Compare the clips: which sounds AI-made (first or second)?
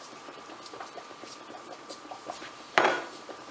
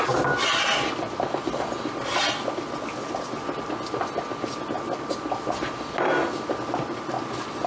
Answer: first